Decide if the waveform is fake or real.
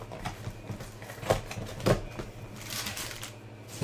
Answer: real